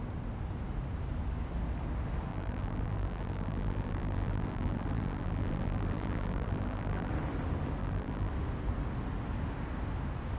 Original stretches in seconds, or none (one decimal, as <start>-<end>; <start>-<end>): 0.0-2.3; 7.1-7.8; 8.3-10.4

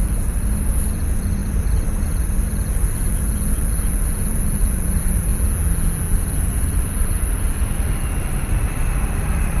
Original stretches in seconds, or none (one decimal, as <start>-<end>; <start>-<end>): 5.3-6.2

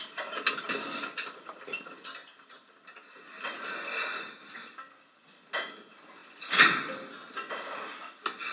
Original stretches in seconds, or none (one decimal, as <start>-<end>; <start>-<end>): 0.0-2.2; 3.9-8.5

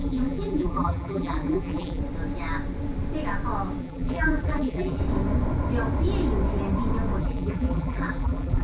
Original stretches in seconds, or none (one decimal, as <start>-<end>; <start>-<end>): 2.0-3.8; 5.0-7.2

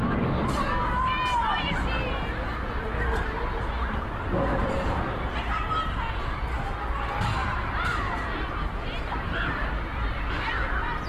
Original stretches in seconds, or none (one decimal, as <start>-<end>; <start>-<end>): 0.0-3.1; 3.7-4.5; 5.0-7.4; 9.4-11.1

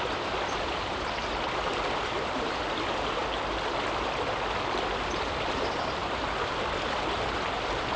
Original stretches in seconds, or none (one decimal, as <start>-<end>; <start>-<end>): 3.2-4.8

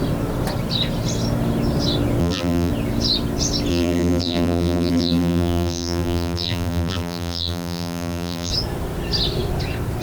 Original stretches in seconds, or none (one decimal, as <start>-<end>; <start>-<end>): 0.0-2.2; 2.7-3.7; 8.5-10.0